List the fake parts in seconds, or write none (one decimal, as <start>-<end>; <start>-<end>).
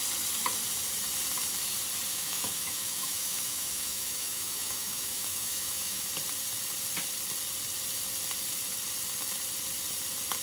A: 2.1-6.1